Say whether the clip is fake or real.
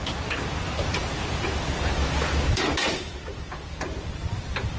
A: fake